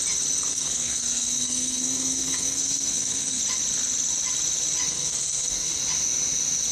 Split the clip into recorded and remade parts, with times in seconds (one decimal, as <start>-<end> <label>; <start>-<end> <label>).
0.0-0.5 recorded; 0.5-3.4 remade; 3.4-4.9 recorded; 4.9-5.8 remade; 5.8-6.7 recorded

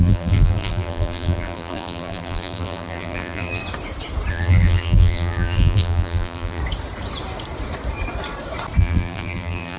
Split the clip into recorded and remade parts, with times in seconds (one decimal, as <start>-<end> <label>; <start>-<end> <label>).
0.0-3.6 remade; 3.6-4.3 recorded; 4.3-6.6 remade; 6.6-8.8 recorded; 8.8-9.8 remade

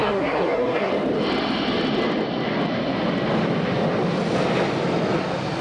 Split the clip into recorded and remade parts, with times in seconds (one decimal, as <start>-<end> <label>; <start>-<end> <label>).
0.0-0.9 remade; 0.9-5.6 recorded

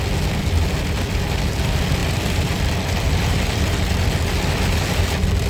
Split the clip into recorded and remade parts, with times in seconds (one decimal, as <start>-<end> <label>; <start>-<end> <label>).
0.0-5.5 recorded